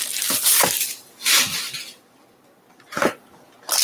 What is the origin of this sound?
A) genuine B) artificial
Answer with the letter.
A